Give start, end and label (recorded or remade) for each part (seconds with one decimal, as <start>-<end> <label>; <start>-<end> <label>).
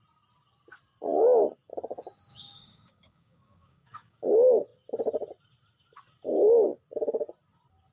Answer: 0.0-2.3 recorded; 2.3-4.3 remade; 4.3-7.9 recorded